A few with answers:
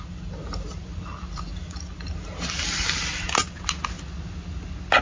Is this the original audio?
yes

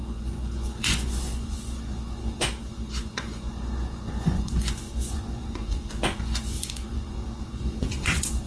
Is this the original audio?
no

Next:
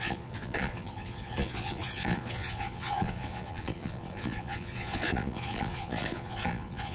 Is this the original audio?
no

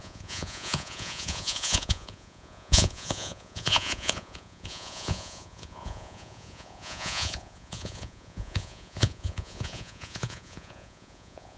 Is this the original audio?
no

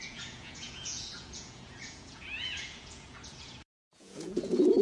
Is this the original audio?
no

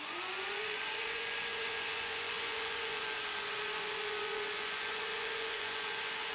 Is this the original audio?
no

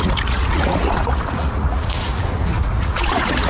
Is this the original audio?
no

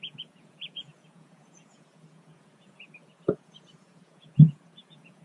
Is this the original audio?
no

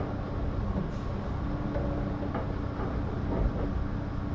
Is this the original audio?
yes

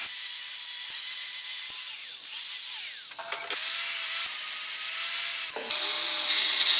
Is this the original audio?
yes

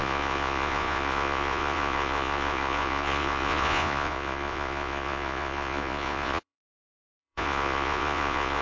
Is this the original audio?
no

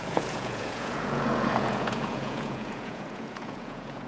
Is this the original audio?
no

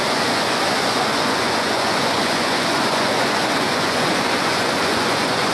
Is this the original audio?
no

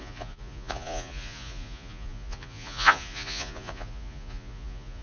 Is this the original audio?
no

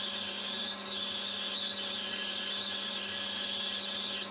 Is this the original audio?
yes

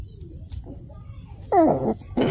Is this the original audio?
yes